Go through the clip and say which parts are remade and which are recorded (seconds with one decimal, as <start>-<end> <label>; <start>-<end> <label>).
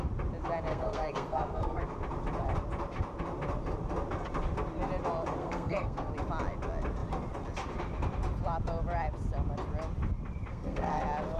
0.0-0.7 recorded; 0.7-1.8 remade; 1.8-5.4 recorded; 5.4-6.1 remade; 6.1-10.5 recorded; 10.5-11.0 remade; 11.0-11.4 recorded